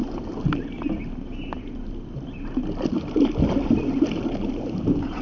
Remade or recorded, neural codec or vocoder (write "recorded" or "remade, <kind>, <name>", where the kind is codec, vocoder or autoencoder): recorded